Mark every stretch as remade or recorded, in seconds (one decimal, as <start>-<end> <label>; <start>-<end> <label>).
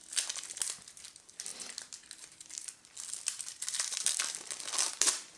0.0-1.5 recorded; 1.5-4.7 remade; 4.7-5.4 recorded